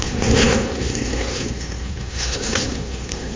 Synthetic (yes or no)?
yes